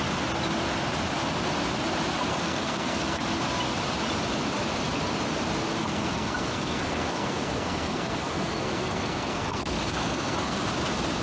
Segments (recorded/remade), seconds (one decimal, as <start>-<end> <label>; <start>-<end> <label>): 0.0-2.3 recorded; 2.3-3.2 remade; 3.2-5.8 recorded; 5.8-10.6 remade; 10.6-11.2 recorded

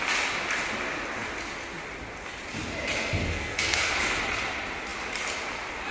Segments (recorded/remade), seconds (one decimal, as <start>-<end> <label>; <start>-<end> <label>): 0.0-3.2 recorded; 3.2-3.9 remade; 3.9-5.9 recorded

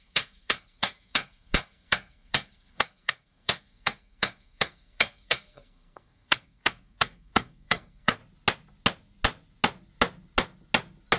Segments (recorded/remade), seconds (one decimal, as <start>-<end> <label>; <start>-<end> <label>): 0.0-8.2 remade; 8.2-11.2 recorded

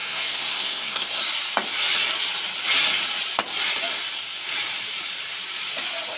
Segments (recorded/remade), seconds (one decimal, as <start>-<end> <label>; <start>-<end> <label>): 0.0-1.2 remade; 1.2-6.2 recorded

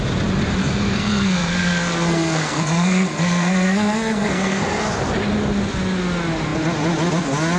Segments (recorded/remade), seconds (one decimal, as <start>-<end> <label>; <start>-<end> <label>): 0.0-0.6 recorded; 0.6-4.8 remade; 4.8-7.6 recorded

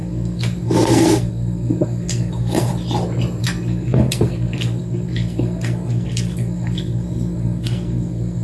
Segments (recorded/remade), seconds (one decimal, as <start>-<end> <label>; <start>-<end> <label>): 0.0-2.7 remade; 2.7-3.4 recorded; 3.4-8.4 remade

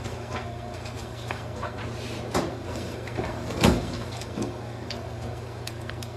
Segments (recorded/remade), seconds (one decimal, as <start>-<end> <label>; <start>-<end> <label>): 0.0-1.8 remade; 1.8-2.5 recorded; 2.5-6.2 remade

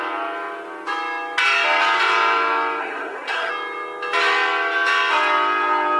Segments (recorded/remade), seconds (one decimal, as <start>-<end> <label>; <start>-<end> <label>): 0.0-2.8 recorded; 2.8-3.5 remade; 3.5-6.0 recorded